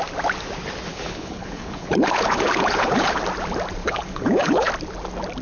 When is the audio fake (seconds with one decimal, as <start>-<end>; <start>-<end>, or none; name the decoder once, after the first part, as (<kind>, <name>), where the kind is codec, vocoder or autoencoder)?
0.9-3.2 (codec, HILCodec); 3.8-4.7

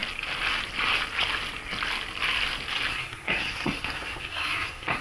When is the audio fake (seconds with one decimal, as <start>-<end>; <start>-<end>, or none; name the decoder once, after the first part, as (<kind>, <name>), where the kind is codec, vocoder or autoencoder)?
2.9-5.0 (codec, SNAC)

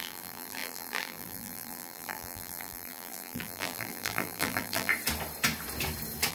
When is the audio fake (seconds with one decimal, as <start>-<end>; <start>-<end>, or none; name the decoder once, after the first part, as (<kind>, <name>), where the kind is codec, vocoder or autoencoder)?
0.0-4.9 (vocoder, BigVGAN v2)